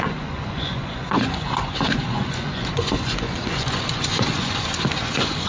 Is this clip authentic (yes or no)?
no